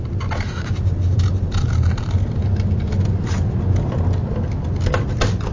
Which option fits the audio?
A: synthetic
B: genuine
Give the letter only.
B